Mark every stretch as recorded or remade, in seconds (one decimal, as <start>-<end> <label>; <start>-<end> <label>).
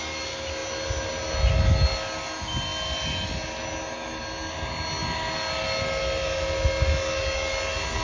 0.0-8.0 recorded